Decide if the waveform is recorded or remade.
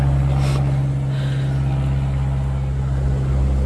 recorded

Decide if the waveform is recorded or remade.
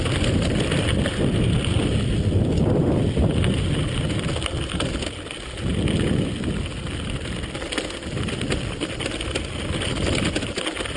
recorded